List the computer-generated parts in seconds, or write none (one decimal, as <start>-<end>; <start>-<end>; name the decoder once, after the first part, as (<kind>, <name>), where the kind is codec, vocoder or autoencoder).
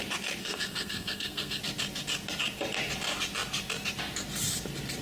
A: 0.4-1.6 (codec, SNAC)